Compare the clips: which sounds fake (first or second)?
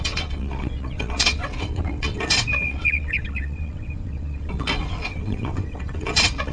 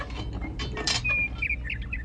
first